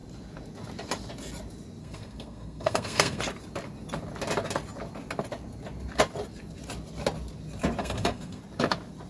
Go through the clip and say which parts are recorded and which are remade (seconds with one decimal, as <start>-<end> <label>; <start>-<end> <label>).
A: 0.0-1.8 recorded; 1.8-3.2 remade; 3.2-7.8 recorded; 7.8-8.4 remade; 8.4-9.1 recorded